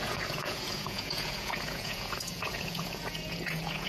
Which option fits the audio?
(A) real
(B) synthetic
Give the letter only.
B